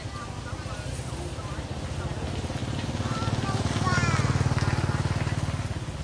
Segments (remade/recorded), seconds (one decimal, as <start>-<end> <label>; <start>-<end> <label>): 0.0-6.0 recorded